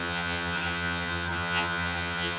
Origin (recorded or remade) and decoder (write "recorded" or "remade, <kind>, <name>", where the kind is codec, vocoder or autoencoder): remade, vocoder, HiFi-GAN